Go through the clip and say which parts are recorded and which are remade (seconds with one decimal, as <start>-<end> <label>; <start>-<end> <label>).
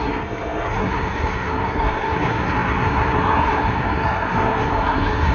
0.0-5.3 remade